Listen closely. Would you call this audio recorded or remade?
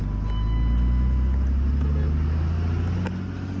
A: recorded